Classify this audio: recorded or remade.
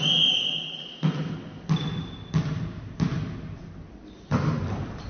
recorded